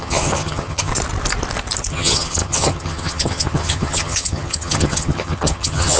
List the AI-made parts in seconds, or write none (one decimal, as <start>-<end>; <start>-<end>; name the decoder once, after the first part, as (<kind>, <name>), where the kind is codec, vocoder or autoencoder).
0.0-0.9 (vocoder, HiFi-GAN); 1.9-6.0